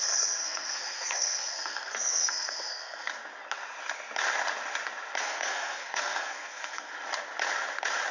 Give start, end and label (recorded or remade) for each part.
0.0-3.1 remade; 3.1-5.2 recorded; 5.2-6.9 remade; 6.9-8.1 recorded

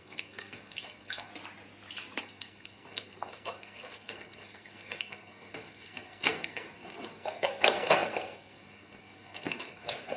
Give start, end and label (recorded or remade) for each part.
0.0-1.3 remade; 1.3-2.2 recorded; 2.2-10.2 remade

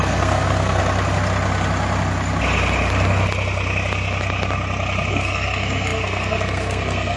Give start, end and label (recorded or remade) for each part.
0.0-0.8 remade; 0.8-5.1 recorded; 5.1-7.2 remade

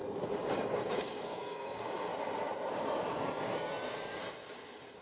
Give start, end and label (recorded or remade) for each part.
0.0-0.5 recorded; 0.5-2.1 remade; 2.1-2.7 recorded; 2.7-4.2 remade; 4.2-5.0 recorded

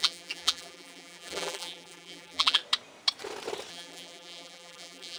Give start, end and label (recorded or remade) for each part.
0.0-2.6 remade; 2.6-3.7 recorded; 3.7-5.2 remade

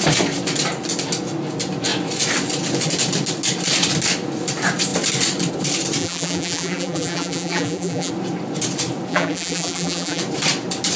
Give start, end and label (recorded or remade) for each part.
0.0-6.0 recorded; 6.0-8.1 remade; 8.1-9.1 recorded; 9.1-10.2 remade; 10.2-11.0 recorded

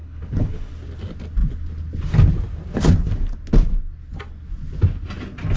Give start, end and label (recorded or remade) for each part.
0.0-0.7 remade; 0.7-5.6 recorded